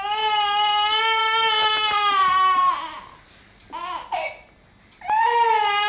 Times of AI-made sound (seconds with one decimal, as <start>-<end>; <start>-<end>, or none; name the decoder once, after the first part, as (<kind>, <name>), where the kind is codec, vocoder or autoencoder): none